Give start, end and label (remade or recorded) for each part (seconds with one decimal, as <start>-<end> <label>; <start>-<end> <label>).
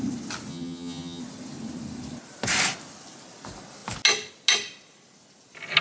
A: 0.0-0.5 recorded; 0.5-1.2 remade; 1.2-5.8 recorded